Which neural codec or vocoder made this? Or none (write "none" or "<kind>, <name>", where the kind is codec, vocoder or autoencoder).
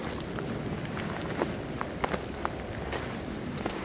none